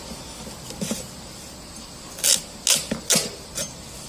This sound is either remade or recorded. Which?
recorded